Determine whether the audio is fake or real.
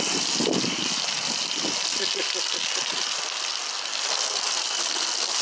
real